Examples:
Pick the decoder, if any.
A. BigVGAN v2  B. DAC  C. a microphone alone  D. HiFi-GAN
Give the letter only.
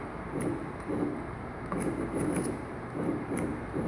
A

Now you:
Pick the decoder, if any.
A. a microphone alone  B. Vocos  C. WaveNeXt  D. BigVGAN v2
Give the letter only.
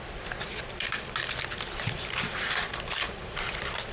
D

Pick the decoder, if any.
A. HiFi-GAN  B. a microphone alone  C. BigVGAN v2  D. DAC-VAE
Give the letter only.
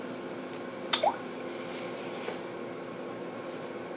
B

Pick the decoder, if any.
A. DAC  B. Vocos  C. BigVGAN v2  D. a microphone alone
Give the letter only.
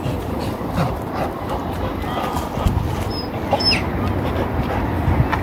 D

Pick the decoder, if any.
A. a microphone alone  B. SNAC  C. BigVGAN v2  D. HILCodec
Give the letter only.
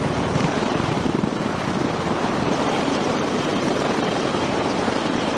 C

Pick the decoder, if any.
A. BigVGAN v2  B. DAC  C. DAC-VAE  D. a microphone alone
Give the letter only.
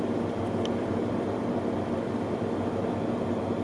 A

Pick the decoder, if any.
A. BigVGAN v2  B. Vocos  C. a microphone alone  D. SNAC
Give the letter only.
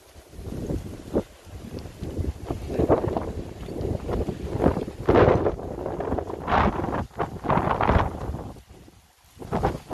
C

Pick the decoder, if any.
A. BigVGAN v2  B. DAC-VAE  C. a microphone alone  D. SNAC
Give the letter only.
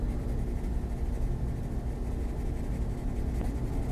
C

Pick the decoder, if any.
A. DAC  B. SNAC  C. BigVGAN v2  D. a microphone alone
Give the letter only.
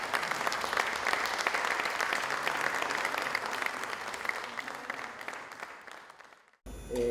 D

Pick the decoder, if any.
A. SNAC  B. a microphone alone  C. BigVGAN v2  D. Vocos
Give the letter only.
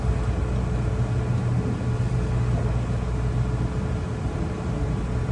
B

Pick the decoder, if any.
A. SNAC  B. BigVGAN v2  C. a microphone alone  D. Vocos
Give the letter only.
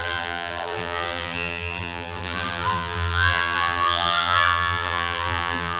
B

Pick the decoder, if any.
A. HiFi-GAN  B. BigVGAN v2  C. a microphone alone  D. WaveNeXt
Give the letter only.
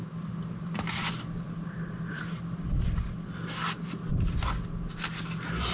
C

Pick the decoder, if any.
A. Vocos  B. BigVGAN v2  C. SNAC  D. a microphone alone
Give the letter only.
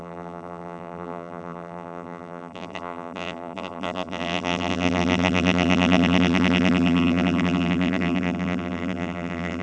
B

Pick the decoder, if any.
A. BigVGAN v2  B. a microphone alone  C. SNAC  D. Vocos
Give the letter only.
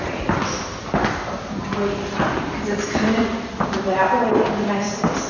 A